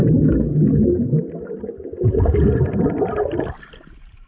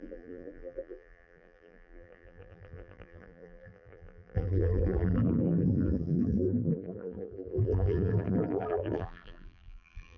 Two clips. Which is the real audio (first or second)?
first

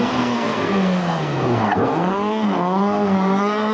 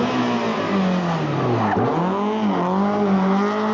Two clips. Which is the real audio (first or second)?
second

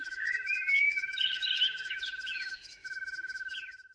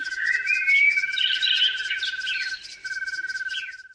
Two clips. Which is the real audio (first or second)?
second